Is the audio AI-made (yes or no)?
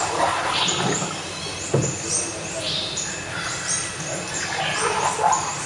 no